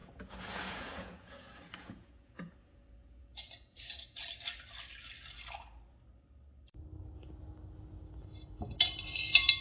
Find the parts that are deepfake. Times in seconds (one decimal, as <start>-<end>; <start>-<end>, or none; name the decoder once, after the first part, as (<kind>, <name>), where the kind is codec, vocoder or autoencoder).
0.0-4.2 (vocoder, Vocos)